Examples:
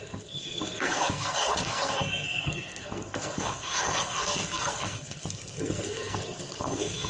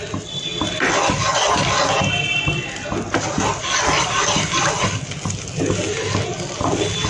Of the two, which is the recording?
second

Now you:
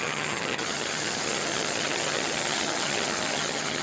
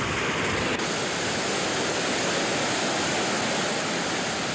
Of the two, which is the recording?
second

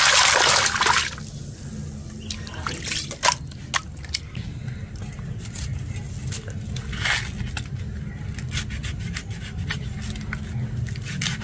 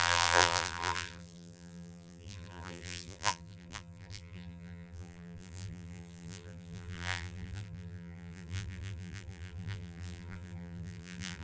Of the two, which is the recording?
first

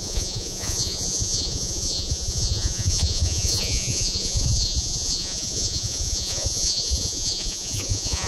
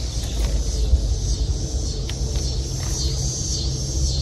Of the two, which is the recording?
second